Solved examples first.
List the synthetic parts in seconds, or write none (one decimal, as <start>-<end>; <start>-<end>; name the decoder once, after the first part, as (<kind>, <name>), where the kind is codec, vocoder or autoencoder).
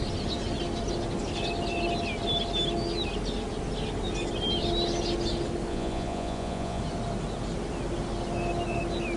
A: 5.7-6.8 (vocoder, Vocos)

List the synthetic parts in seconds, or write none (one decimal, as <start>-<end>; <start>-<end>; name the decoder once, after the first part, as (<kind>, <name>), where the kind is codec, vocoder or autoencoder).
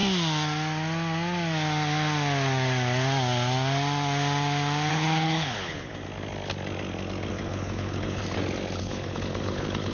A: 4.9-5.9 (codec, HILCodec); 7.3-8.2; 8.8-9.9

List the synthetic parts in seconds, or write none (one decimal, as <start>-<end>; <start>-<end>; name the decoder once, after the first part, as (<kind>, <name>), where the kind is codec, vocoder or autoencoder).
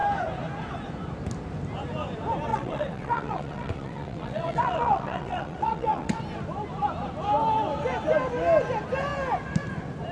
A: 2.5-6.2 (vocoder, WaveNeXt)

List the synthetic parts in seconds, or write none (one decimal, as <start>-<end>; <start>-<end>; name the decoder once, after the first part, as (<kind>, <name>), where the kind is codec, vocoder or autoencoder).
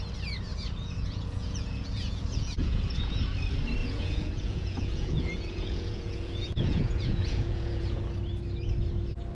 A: 0.5-3.2 (vocoder, Vocos); 3.8-8.0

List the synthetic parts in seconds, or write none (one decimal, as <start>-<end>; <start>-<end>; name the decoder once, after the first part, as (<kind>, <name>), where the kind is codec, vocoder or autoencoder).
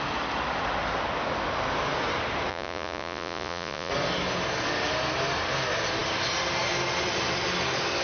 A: 2.5-3.9 (vocoder, Vocos)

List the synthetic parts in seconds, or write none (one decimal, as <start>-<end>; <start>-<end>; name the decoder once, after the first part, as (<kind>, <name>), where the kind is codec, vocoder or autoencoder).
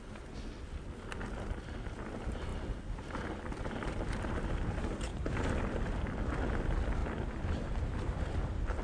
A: none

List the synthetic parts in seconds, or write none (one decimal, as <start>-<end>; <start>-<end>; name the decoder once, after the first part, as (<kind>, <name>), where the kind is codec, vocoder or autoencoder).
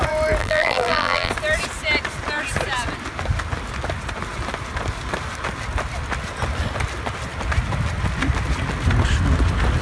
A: 0.4-1.3 (vocoder, BigVGAN v2)